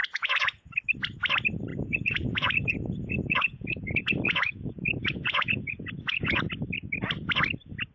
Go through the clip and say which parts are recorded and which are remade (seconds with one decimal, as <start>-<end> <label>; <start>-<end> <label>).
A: 0.0-0.7 remade; 0.7-1.7 recorded; 1.7-6.4 remade; 6.4-7.9 recorded